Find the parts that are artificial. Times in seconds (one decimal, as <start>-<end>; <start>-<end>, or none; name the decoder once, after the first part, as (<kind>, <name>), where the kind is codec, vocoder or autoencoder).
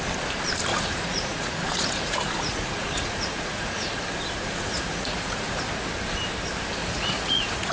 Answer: 0.7-4.0 (vocoder, Vocos); 4.4-5.7; 6.8-7.7